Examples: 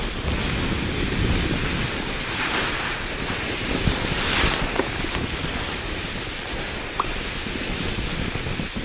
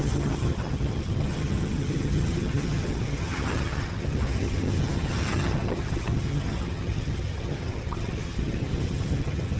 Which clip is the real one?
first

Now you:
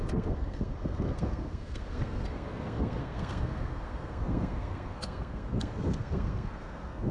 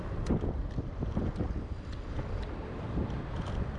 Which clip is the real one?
second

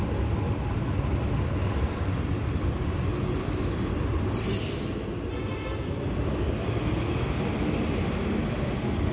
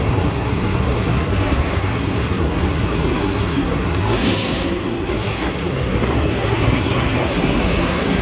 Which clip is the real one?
first